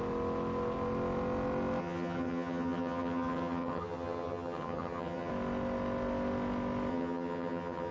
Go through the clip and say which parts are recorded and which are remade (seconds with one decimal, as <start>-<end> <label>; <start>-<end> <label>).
0.0-1.8 recorded; 1.8-5.3 remade; 5.3-6.9 recorded; 6.9-7.9 remade